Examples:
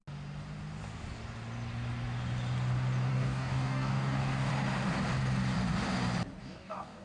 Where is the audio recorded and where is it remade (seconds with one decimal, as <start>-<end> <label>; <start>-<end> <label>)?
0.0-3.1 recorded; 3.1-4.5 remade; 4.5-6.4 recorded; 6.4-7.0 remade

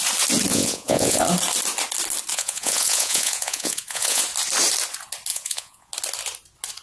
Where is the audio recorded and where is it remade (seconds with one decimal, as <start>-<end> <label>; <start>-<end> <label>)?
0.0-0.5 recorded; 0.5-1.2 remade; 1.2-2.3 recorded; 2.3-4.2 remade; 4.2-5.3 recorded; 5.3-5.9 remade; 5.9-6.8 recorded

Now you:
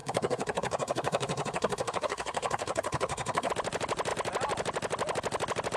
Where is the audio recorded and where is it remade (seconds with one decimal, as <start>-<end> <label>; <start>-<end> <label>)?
0.0-3.5 remade; 3.5-5.8 recorded